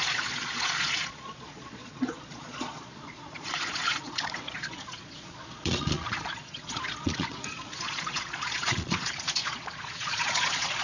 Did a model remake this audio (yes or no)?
yes